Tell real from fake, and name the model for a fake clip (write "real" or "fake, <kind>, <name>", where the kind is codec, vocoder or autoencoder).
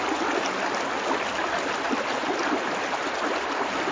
real